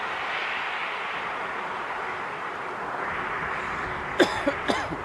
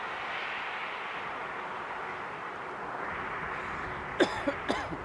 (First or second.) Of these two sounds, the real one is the second